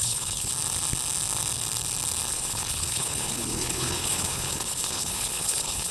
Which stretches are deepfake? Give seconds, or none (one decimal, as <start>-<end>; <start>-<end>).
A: 0.0-0.5; 2.3-5.9